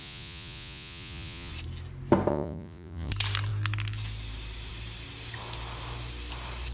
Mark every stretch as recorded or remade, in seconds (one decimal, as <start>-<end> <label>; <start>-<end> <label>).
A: 0.0-1.5 remade; 1.5-2.3 recorded; 2.3-3.1 remade; 3.1-6.7 recorded